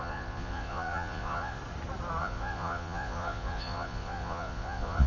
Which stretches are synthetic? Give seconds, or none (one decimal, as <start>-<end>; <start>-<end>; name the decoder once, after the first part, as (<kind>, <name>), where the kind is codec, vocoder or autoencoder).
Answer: 0.0-1.6 (vocoder, Vocos); 2.2-5.1